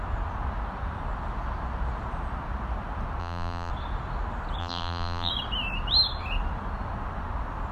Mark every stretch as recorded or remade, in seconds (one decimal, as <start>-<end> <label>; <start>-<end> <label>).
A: 0.0-3.2 recorded; 3.2-3.7 remade; 3.7-4.6 recorded; 4.6-5.3 remade; 5.3-7.7 recorded